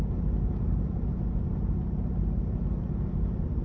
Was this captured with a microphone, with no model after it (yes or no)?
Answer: yes